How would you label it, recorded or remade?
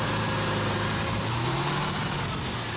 recorded